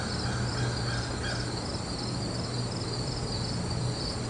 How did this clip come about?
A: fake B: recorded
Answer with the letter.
B